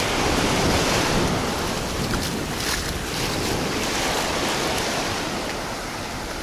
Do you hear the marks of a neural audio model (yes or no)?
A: no